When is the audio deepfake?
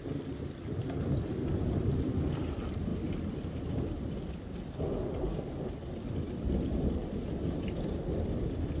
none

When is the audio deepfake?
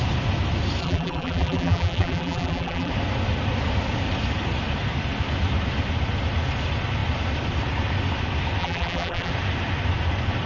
0.8-2.9; 8.6-9.3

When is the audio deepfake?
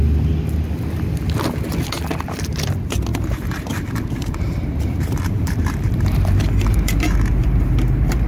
3.1-8.3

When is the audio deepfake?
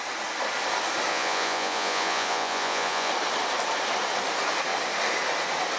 1.1-3.1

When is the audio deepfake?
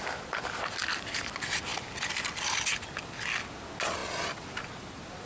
none